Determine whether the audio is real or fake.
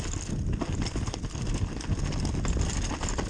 real